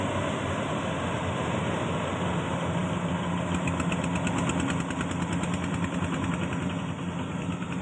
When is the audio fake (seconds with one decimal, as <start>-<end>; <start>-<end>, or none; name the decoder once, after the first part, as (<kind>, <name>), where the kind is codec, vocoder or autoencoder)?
none